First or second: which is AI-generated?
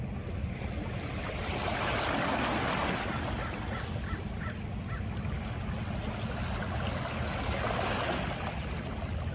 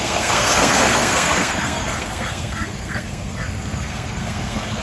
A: second